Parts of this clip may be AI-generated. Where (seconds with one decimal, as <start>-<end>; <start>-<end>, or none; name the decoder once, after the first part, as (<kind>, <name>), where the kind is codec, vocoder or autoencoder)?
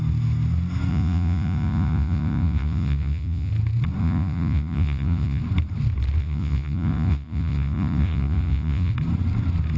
0.9-3.5 (vocoder, Vocos); 4.0-5.4; 6.2-8.9